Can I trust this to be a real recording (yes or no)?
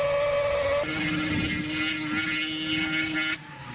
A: yes